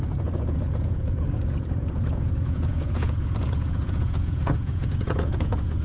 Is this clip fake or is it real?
fake